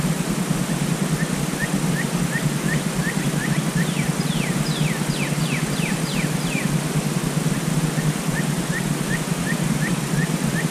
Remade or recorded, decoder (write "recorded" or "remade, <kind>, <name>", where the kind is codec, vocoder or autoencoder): recorded